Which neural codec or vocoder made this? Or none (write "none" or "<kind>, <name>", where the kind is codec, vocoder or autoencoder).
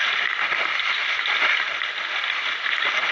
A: none